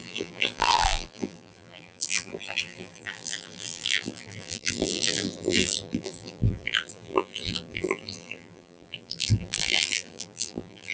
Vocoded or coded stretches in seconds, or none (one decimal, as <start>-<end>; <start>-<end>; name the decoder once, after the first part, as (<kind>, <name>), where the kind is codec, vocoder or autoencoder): 0.0-10.9 (vocoder, BigVGAN v2)